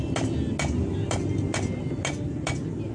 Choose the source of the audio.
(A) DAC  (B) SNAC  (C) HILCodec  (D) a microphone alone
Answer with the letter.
D